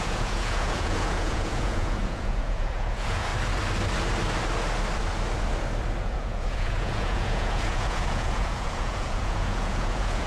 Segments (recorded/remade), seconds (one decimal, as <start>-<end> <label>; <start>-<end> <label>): 0.0-3.3 remade; 3.3-6.0 recorded; 6.0-10.3 remade